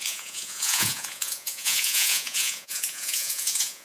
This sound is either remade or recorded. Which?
remade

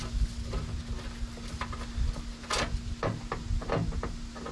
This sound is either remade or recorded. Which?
recorded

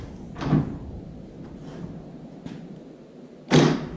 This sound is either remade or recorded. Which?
recorded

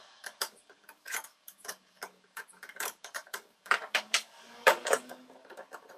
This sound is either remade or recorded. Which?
remade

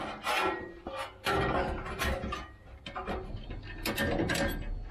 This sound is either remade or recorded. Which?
recorded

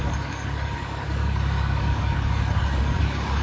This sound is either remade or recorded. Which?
remade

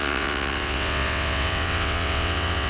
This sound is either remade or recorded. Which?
remade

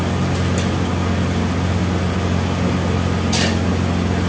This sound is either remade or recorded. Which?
recorded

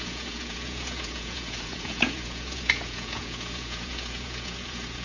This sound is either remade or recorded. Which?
remade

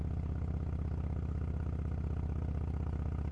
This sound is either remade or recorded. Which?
recorded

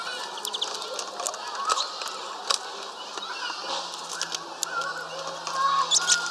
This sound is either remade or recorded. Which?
recorded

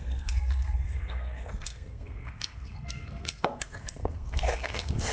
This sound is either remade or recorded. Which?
remade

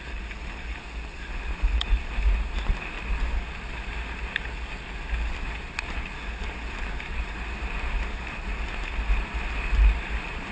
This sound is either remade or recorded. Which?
recorded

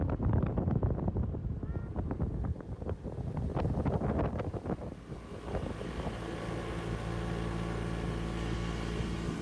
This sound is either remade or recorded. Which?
recorded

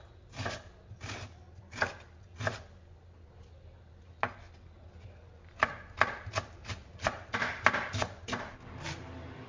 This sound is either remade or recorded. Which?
recorded